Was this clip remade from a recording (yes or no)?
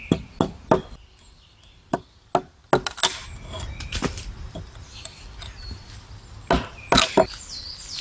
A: no